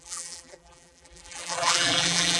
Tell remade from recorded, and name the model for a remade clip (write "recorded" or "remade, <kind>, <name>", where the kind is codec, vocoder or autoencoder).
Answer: remade, vocoder, BigVGAN v2